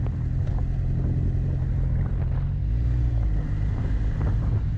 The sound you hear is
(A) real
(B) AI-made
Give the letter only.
A